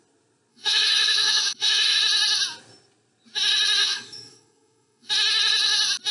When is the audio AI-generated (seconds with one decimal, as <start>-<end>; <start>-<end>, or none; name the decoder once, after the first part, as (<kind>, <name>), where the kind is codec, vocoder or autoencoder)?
0.5-2.0 (autoencoder, DAC-VAE); 3.8-5.1